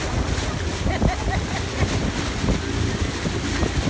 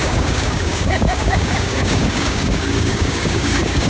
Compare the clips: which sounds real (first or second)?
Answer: first